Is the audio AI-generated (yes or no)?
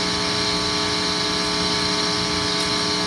no